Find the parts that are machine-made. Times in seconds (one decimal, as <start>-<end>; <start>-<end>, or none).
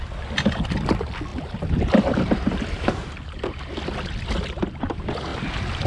none